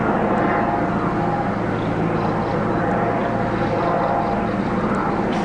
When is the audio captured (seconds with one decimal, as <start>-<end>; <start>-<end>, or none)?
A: 0.0-5.4